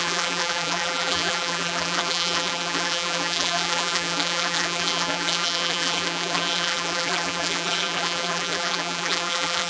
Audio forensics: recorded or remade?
remade